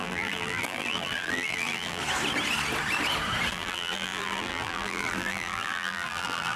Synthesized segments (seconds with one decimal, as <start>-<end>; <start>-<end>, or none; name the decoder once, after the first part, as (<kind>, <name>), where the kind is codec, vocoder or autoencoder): 0.0-2.0 (vocoder, BigVGAN v2); 3.5-6.6